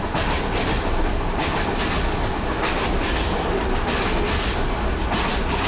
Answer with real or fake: real